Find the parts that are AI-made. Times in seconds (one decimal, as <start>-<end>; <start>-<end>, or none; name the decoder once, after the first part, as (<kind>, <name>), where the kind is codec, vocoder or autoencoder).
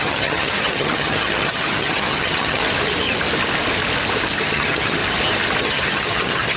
0.0-2.6 (vocoder, HiFi-GAN); 4.4-5.0; 5.6-6.6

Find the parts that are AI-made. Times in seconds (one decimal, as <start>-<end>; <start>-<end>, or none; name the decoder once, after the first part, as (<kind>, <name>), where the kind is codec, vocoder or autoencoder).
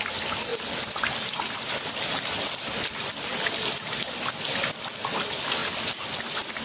none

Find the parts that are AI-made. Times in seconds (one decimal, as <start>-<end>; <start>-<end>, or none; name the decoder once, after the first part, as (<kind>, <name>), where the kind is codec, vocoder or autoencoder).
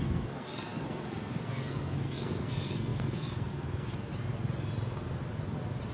0.0-4.1 (codec, SNAC)